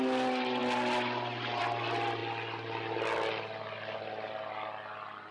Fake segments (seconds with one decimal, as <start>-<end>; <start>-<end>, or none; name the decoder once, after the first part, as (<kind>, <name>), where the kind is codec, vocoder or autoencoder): none

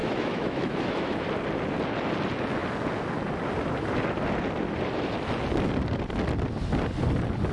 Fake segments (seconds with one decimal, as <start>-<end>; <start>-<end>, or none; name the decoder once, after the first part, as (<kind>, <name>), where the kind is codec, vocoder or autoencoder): 0.0-1.2 (autoencoder, DAC-VAE)

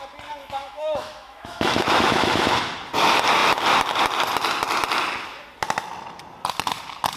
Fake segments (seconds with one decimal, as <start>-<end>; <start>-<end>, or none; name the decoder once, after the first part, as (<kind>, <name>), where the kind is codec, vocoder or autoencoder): 0.4-2.5 (autoencoder, DAC-VAE)

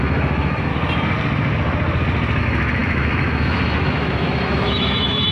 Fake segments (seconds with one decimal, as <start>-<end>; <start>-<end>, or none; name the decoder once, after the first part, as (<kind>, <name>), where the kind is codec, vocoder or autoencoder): 0.0-0.7 (autoencoder, DAC-VAE); 2.4-5.3